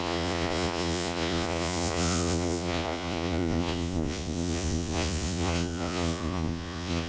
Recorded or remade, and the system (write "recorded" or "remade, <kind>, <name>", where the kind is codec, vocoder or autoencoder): remade, vocoder, Vocos